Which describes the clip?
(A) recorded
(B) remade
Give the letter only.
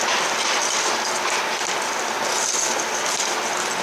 A